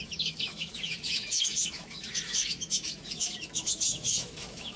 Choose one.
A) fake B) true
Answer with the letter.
A